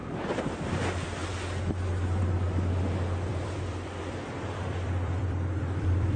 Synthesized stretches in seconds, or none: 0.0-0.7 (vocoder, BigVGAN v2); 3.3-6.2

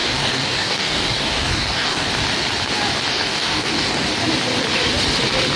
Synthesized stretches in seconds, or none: 0.0-2.1 (codec, DAC); 3.1-4.2

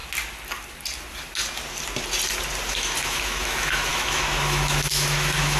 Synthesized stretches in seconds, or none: 2.7-5.6 (autoencoder, DAC-VAE)